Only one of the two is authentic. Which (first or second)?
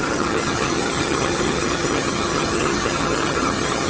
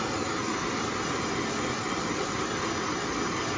second